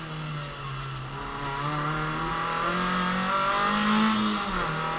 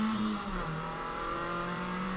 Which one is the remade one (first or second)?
second